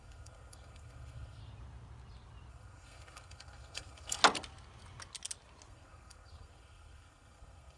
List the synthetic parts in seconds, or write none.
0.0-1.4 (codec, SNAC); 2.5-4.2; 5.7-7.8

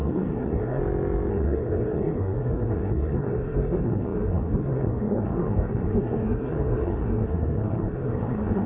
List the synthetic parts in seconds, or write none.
0.0-0.8 (codec, SNAC); 1.3-8.7

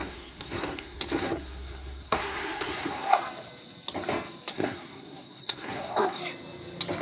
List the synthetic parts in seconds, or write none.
0.0-3.2 (codec, SNAC); 4.5-6.2

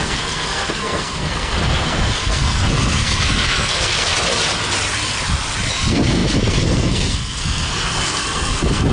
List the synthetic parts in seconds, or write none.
0.0-4.1 (codec, SNAC); 5.7-8.9

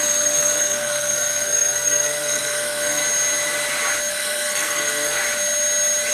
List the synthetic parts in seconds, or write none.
0.0-3.0 (codec, SNAC); 4.1-5.2

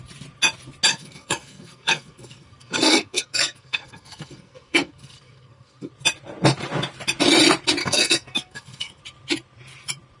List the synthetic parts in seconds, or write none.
0.9-5.9 (codec, SNAC); 7.8-9.0